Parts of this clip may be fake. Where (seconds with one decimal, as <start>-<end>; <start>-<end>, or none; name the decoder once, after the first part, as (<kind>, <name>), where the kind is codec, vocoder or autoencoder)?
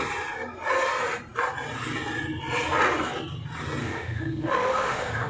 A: 3.8-5.3 (autoencoder, DAC-VAE)